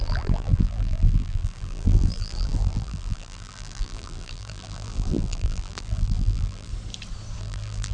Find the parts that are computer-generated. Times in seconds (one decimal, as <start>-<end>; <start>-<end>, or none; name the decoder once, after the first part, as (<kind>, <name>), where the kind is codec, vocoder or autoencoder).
0.0-6.7 (vocoder, BigVGAN v2); 7.4-7.9